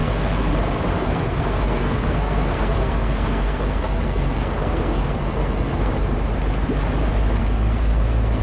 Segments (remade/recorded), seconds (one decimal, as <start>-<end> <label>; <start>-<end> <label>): 0.0-0.5 remade; 0.5-0.9 recorded; 0.9-5.9 remade; 5.9-7.4 recorded; 7.4-8.4 remade